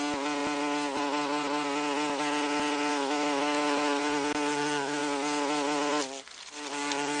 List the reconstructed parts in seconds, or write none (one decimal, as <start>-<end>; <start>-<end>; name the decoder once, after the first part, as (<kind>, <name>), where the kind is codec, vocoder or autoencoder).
2.9-4.0 (autoencoder, DAC-VAE)